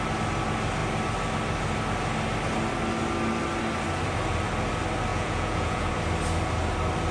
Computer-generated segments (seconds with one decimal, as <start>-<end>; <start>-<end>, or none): 5.1-5.9